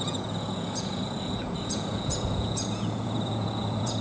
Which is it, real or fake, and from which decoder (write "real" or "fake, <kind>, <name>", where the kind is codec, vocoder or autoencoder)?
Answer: fake, vocoder, Vocos